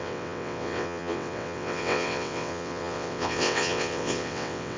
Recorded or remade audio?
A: remade